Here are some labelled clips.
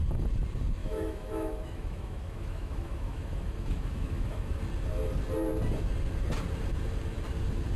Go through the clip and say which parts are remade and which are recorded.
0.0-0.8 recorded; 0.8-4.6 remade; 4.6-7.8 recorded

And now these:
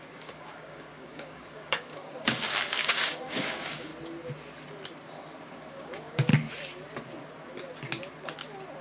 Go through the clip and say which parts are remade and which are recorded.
0.0-3.9 remade; 3.9-5.7 recorded; 5.7-6.3 remade; 6.3-8.8 recorded

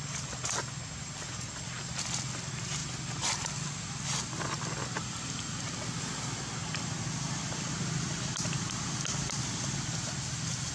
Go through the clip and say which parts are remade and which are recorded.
0.0-10.7 recorded

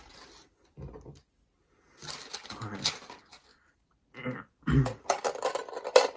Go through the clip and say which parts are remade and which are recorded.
0.0-6.2 recorded

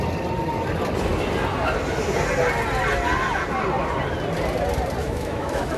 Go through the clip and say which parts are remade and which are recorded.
0.0-5.0 recorded; 5.0-5.8 remade